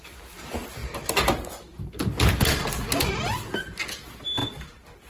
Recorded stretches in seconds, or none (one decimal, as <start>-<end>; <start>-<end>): 0.0-5.1